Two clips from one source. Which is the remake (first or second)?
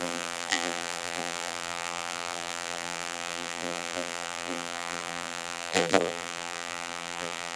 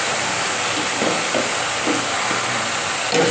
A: first